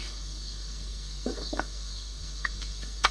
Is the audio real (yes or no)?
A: no